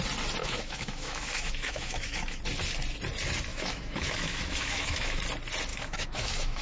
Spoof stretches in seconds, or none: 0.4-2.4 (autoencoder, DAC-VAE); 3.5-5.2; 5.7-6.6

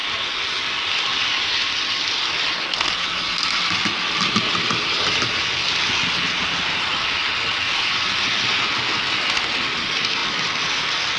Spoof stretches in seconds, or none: none

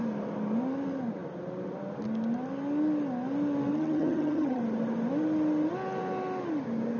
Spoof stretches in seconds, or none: 3.7-4.6 (vocoder, HiFi-GAN)

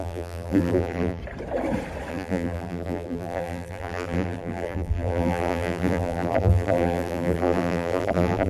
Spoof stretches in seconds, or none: 0.0-1.2 (vocoder, BigVGAN v2); 2.1-8.5

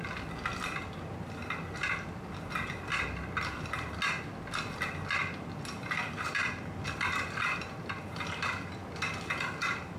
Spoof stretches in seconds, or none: none

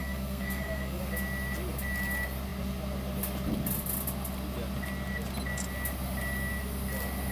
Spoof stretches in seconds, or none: 0.0-1.0 (codec, SNAC)